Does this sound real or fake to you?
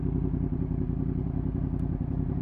fake